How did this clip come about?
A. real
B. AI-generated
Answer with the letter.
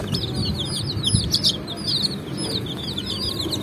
A